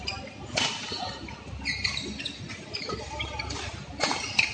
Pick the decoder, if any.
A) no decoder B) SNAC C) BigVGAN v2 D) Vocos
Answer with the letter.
A